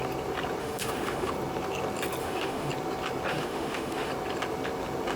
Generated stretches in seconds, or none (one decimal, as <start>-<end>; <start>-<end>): 0.6-1.3; 2.2-2.7; 3.3-4.1